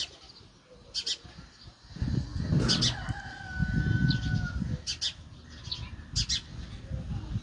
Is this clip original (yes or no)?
yes